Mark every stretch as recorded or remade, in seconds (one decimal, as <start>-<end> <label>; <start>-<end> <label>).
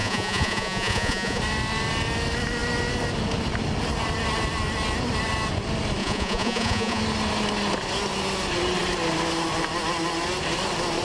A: 0.0-1.4 remade; 1.4-6.0 recorded; 6.0-7.0 remade; 7.0-11.0 recorded